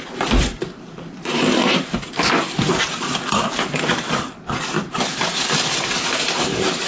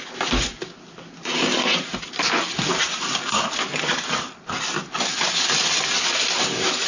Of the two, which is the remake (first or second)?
first